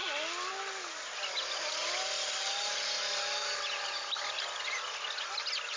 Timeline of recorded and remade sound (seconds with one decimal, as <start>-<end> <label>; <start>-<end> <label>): 0.0-5.8 recorded